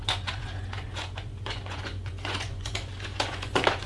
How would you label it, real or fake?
fake